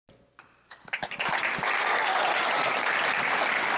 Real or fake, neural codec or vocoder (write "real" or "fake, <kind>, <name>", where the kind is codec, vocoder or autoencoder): real